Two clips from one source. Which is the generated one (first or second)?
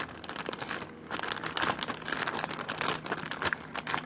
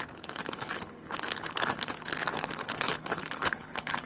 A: second